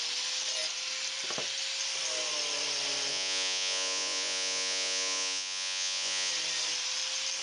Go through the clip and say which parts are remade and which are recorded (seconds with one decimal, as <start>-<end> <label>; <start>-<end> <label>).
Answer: 0.0-3.1 recorded; 3.1-6.3 remade; 6.3-7.4 recorded